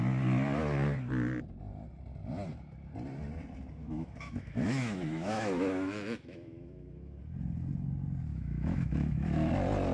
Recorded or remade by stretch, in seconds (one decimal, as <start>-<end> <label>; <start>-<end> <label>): 0.0-3.8 recorded; 3.8-7.2 remade; 7.2-8.3 recorded; 8.3-9.5 remade; 9.5-9.9 recorded